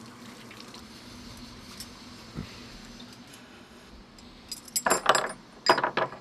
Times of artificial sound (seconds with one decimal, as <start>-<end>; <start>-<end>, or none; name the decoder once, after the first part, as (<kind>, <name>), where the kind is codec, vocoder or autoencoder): 3.3-3.9 (autoencoder, DAC-VAE)